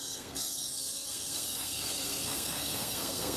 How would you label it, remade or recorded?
remade